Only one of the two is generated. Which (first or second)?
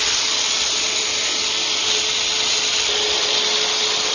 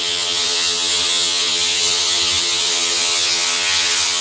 second